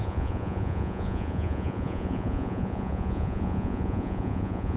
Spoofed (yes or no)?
yes